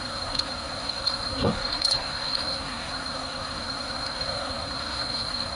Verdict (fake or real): fake